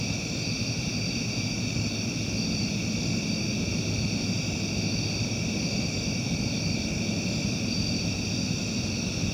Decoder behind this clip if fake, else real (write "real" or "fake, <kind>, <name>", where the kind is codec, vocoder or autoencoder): real